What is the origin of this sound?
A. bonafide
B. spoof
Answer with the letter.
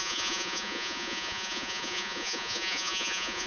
B